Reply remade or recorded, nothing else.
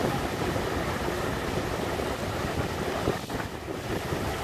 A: recorded